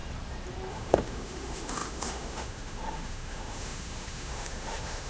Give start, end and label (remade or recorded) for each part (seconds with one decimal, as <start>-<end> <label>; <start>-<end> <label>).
0.0-0.7 recorded; 0.7-5.1 remade